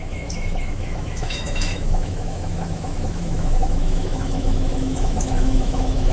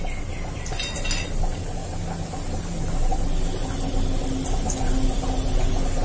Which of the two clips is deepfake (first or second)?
first